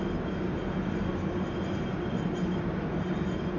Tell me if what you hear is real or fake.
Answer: real